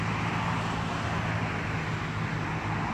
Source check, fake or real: real